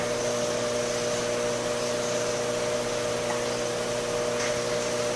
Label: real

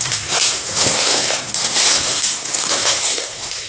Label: fake